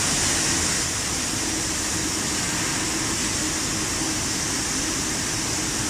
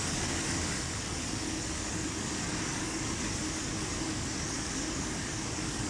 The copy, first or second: second